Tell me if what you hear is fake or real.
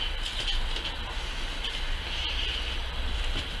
real